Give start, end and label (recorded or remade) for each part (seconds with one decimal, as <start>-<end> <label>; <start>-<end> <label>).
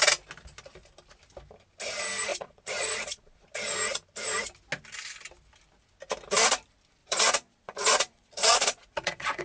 0.0-2.3 recorded; 2.3-3.5 remade; 3.5-7.0 recorded; 7.0-9.4 remade